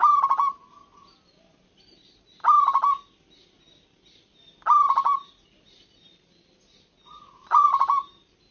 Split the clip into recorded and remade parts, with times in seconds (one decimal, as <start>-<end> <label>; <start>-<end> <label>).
0.0-7.1 recorded; 7.1-7.7 remade; 7.7-8.5 recorded